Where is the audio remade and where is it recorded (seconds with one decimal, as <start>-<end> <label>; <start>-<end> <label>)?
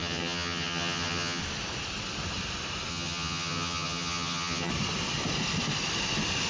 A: 0.0-1.4 remade; 1.4-2.9 recorded; 2.9-4.7 remade; 4.7-6.5 recorded